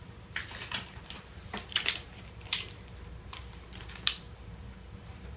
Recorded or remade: remade